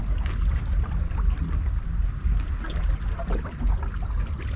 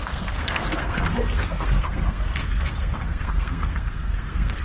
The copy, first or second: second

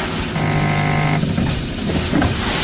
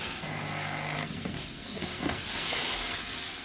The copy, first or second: second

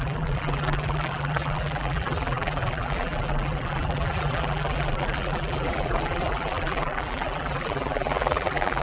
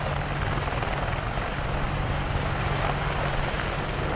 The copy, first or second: first